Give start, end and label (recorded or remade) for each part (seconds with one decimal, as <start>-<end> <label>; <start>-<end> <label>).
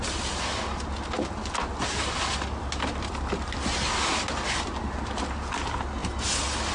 0.0-6.7 recorded